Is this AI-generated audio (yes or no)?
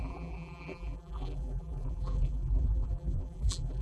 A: yes